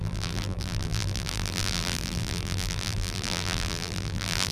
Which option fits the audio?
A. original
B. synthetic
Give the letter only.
B